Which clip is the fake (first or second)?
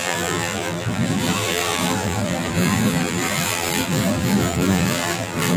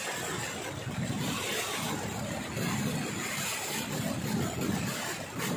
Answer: first